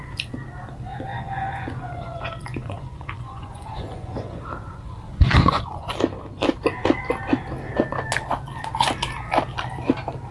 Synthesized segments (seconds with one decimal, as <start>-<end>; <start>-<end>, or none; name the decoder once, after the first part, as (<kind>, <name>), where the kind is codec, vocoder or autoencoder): 1.1-4.4 (vocoder, Vocos); 5.1-5.9